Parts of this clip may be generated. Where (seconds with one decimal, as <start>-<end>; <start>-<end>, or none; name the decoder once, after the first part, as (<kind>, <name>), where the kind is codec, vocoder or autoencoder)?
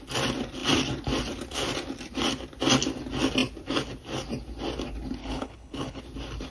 5.2-6.0 (codec, HILCodec)